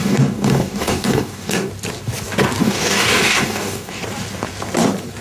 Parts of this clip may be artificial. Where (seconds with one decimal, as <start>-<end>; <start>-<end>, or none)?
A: 0.0-1.7; 2.6-4.0